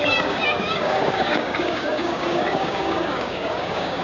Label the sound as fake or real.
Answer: fake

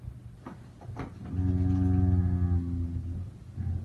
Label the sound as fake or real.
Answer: real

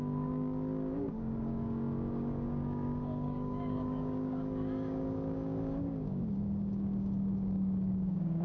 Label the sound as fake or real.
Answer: fake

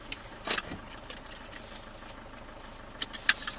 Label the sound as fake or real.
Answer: real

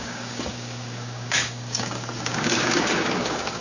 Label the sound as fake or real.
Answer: fake